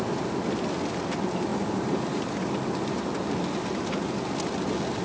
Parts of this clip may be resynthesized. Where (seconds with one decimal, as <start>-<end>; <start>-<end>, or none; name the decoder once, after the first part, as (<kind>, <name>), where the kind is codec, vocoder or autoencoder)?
1.5-2.9 (vocoder, BigVGAN v2)